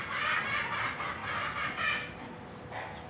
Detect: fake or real real